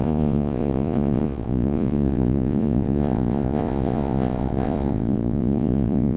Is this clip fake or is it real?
fake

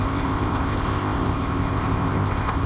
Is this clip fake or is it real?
fake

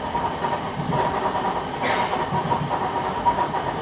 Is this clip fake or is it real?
fake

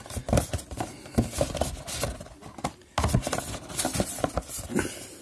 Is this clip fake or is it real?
real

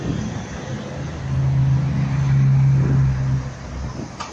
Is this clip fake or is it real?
real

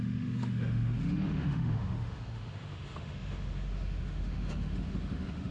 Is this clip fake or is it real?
fake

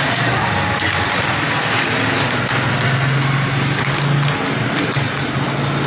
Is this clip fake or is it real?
real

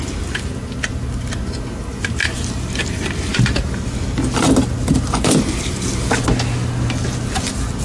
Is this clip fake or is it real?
real